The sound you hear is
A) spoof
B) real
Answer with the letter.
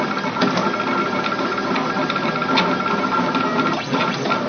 B